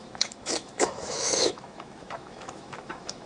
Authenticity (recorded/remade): remade